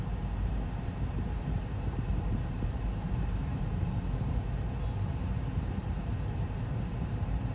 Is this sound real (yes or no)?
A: no